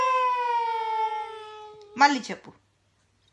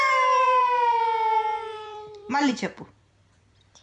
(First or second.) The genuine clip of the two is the first